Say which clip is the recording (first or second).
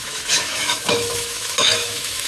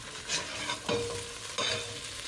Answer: second